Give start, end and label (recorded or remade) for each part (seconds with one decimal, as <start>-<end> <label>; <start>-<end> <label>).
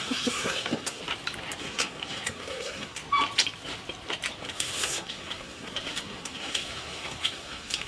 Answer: 0.0-1.0 remade; 1.0-1.6 recorded; 1.6-3.0 remade; 3.0-4.4 recorded; 4.4-7.9 remade